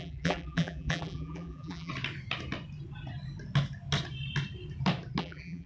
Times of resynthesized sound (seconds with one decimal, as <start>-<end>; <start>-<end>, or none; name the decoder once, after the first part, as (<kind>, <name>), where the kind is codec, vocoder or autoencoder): 0.0-1.9 (vocoder, BigVGAN v2); 5.2-5.7